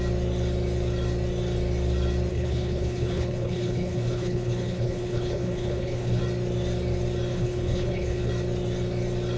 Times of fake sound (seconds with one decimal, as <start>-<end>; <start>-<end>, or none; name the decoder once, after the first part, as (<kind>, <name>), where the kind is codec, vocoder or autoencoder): 2.3-6.2 (codec, HILCodec); 7.3-8.3